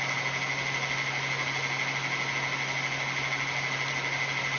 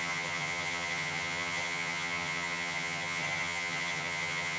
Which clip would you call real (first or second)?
first